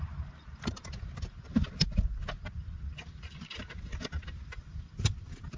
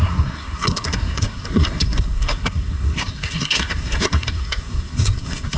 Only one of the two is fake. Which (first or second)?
second